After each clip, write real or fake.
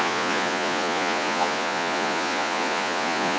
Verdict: fake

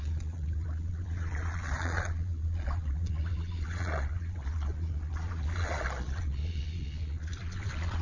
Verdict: fake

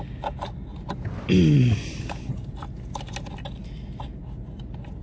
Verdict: real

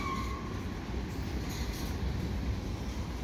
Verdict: real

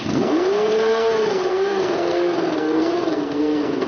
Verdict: fake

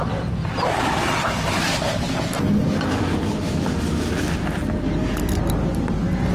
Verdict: real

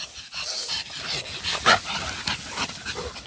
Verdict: real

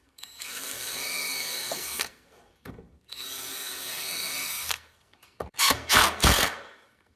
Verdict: fake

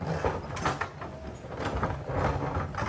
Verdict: real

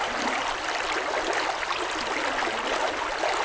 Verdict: real